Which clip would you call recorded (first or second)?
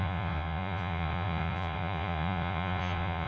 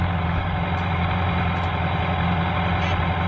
second